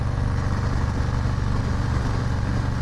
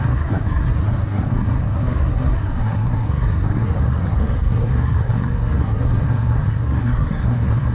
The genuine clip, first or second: first